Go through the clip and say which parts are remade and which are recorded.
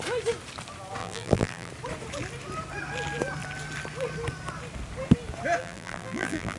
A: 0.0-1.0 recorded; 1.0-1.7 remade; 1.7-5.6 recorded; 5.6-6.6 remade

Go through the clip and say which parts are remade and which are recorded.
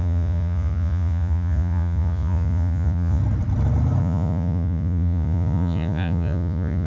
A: 0.0-3.2 remade; 3.2-4.0 recorded; 4.0-6.9 remade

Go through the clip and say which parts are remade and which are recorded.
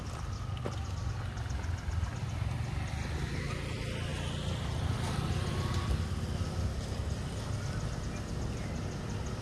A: 0.0-9.4 recorded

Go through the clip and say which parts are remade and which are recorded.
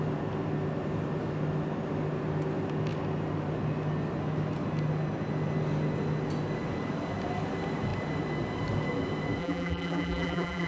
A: 0.0-9.4 recorded; 9.4-10.7 remade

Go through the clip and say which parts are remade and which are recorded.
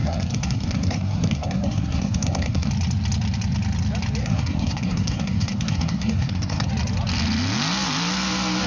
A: 0.0-2.7 remade; 2.7-4.2 recorded; 4.2-6.7 remade; 6.7-8.7 recorded